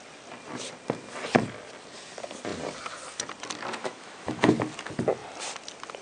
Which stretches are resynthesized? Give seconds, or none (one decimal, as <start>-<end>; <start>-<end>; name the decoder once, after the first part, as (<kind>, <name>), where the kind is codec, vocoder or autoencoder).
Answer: 3.8-4.5 (autoencoder, DAC-VAE)